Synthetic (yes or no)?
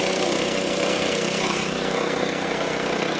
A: yes